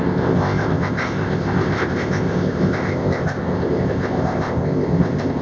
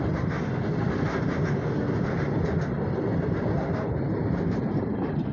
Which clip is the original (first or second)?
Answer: second